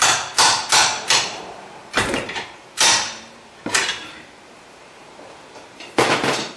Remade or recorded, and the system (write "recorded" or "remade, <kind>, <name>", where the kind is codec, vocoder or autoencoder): remade, vocoder, BigVGAN v2